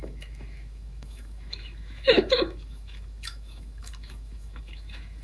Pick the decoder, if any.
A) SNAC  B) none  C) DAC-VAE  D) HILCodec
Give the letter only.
C